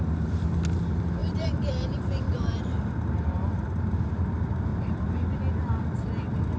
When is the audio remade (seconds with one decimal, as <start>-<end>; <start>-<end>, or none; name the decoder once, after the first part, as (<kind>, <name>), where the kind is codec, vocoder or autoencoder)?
1.2-3.9 (vocoder, BigVGAN v2); 4.7-5.4